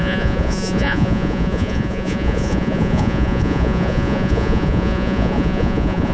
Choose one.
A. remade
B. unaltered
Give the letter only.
A